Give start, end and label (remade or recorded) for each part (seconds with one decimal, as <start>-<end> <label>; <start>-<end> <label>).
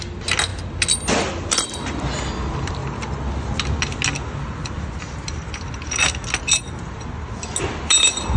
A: 0.0-8.4 recorded